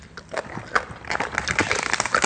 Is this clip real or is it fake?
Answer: real